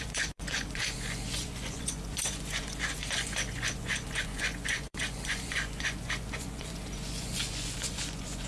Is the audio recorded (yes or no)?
no